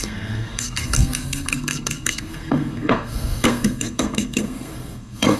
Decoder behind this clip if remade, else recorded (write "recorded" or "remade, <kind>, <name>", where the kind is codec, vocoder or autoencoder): remade, codec, SNAC